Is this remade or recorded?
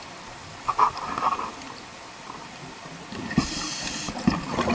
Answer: recorded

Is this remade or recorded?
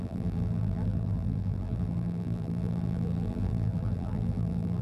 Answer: remade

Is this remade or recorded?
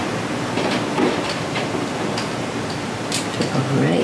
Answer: recorded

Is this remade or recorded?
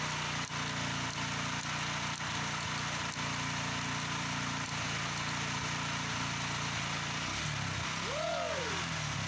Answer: recorded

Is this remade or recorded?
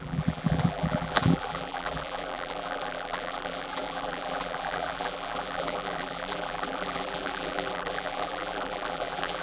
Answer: remade